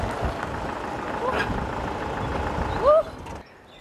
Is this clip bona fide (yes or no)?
yes